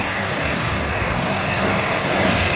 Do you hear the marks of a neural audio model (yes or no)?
yes